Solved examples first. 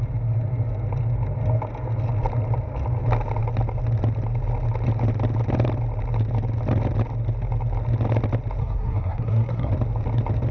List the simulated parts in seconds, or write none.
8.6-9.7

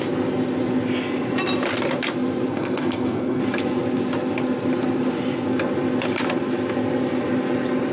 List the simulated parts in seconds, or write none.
2.5-3.4

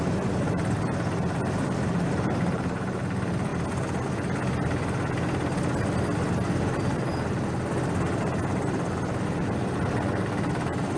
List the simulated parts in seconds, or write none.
none

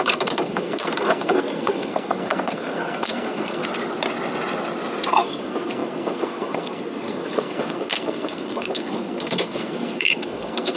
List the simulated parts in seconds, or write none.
0.0-3.6; 5.1-10.8

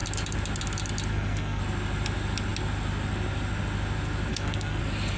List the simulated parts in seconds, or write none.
1.1-1.6; 4.3-4.8

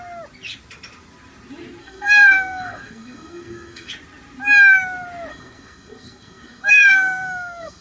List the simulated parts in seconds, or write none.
1.8-3.9; 5.3-7.8

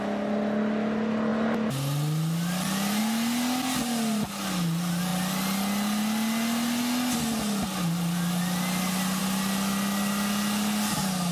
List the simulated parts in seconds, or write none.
none